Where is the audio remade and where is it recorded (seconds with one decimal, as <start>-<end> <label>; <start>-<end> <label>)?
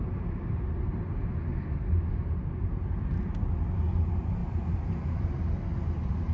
0.0-6.3 recorded